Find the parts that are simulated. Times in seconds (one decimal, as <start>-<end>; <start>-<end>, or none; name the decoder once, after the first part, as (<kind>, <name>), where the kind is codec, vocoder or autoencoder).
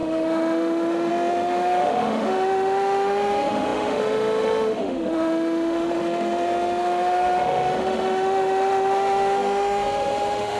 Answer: 0.0-10.6 (autoencoder, DAC-VAE)